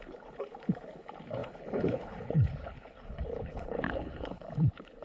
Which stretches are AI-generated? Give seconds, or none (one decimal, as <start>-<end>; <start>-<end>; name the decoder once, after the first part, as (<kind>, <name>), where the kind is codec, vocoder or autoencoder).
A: 0.0-5.0 (codec, HILCodec)